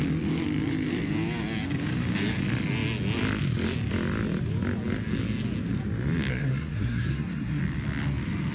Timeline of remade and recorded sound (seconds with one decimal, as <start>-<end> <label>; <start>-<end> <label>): 0.0-6.3 recorded; 6.3-7.6 remade; 7.6-8.5 recorded